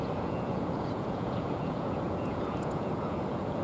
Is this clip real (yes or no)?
no